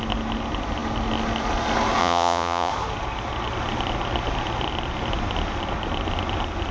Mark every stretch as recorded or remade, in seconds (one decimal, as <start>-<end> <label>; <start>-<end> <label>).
0.0-2.0 recorded; 2.0-2.7 remade; 2.7-6.7 recorded